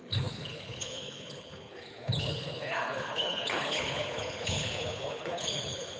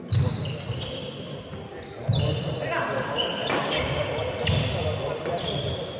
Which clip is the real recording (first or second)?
second